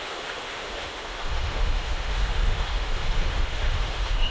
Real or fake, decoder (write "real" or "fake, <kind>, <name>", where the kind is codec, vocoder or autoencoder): fake, autoencoder, DAC-VAE